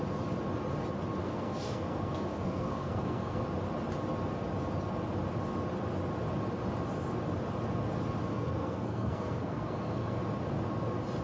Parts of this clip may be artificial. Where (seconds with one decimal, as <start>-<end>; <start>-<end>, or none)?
1.2-3.4; 8.3-10.2